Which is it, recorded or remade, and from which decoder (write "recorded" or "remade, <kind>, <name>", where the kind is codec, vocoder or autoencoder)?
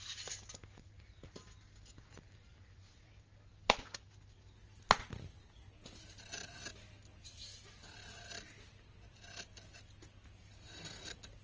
recorded